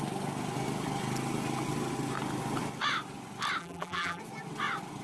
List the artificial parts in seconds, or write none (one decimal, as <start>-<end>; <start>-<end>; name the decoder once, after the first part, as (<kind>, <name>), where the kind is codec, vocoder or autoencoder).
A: 3.6-4.2 (vocoder, BigVGAN v2)